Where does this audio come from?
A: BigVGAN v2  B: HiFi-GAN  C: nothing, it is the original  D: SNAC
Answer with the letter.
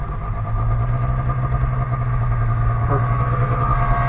C